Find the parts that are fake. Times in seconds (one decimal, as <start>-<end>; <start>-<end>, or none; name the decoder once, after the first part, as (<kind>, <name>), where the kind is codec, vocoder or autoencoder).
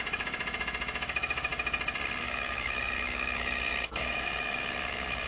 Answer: 0.0-1.5 (autoencoder, DAC-VAE); 2.2-5.3